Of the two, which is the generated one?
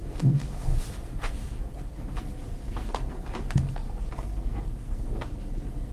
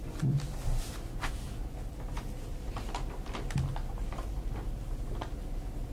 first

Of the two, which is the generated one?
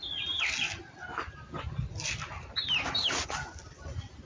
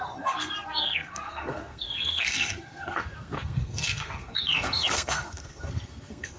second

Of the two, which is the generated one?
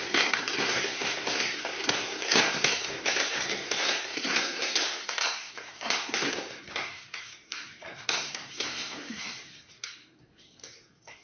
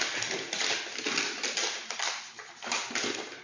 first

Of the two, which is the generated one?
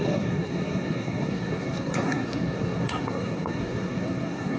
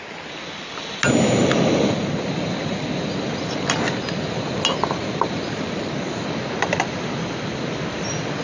first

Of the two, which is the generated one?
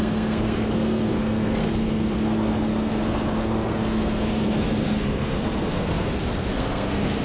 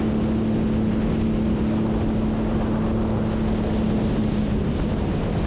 first